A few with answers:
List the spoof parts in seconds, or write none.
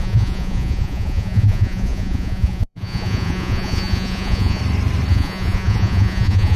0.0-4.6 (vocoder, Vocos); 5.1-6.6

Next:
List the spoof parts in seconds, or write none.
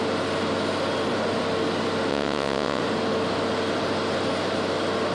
2.1-2.8 (vocoder, WaveNeXt)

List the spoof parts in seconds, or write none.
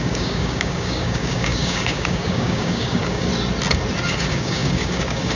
0.0-3.3 (codec, DAC); 4.1-5.4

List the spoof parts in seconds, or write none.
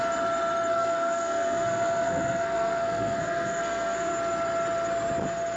0.7-4.1 (codec, SNAC)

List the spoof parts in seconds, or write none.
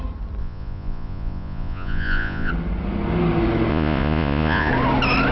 0.4-2.5 (vocoder, Vocos); 3.7-4.7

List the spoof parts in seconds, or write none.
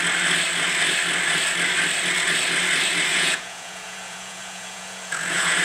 3.1-5.6 (vocoder, Vocos)